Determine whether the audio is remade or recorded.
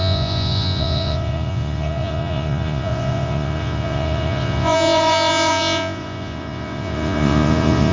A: remade